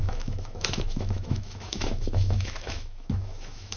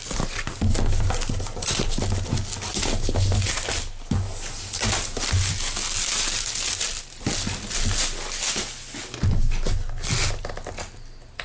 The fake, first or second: first